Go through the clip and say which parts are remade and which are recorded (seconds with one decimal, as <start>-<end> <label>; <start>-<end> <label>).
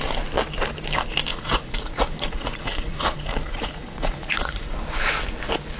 0.0-1.3 recorded; 1.3-4.8 remade; 4.8-5.8 recorded